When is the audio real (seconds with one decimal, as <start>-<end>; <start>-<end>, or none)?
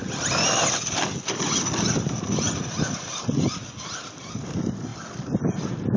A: 0.0-6.0